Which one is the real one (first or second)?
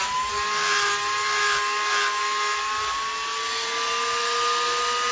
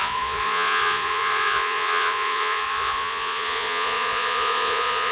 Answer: first